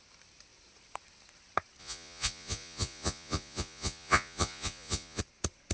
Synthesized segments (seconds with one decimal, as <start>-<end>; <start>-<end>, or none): 1.8-5.2